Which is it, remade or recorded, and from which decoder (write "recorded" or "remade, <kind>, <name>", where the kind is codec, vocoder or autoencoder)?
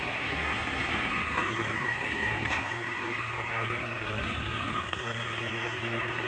remade, codec, SNAC